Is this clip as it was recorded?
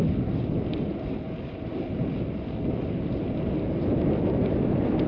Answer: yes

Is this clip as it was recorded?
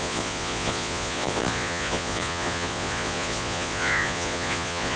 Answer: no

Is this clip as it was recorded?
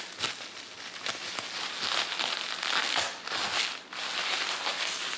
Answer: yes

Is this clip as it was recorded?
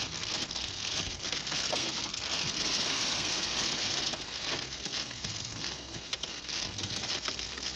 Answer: no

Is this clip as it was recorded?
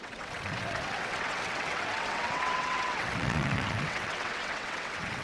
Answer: no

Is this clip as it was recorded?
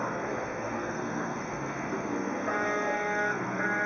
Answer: no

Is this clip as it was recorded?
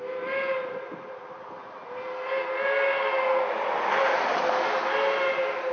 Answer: yes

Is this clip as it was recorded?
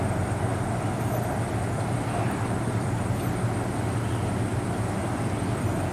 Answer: yes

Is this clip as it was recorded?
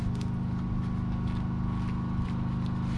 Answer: yes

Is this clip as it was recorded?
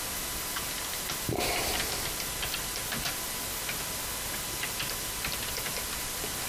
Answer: yes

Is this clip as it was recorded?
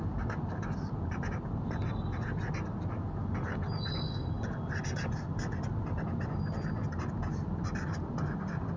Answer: yes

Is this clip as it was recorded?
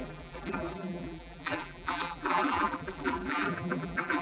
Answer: no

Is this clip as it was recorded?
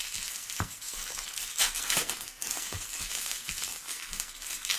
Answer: no